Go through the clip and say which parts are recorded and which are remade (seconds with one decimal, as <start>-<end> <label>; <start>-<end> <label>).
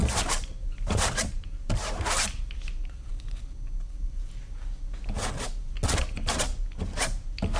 0.0-2.4 remade; 2.4-7.6 recorded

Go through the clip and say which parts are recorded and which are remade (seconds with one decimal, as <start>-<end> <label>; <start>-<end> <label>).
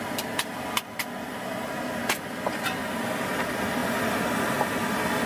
0.0-5.3 recorded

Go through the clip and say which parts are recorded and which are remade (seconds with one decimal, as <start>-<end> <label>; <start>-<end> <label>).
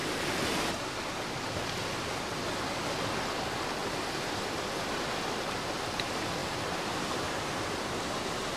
0.0-3.8 recorded; 3.8-5.0 remade; 5.0-6.4 recorded; 6.4-7.8 remade; 7.8-8.6 recorded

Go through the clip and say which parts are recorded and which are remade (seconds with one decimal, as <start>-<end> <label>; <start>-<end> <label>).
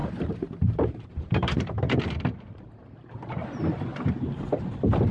0.0-3.9 remade; 3.9-5.1 recorded